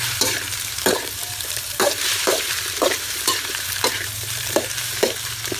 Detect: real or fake fake